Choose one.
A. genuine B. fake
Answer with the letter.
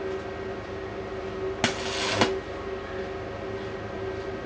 A